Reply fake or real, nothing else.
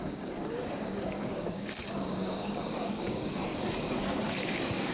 fake